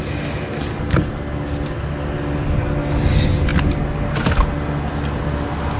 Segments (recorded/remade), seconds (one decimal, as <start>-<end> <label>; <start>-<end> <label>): 0.0-5.8 recorded